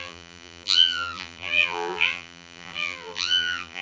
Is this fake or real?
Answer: fake